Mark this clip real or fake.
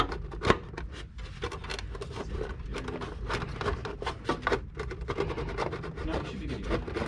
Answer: real